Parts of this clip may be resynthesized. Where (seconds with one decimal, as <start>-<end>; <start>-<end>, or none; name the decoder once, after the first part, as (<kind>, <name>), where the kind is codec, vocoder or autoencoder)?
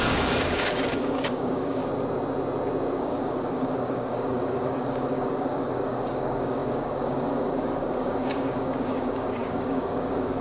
0.0-1.8 (codec, DAC); 3.0-10.4